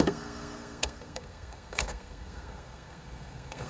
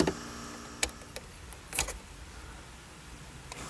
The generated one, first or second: first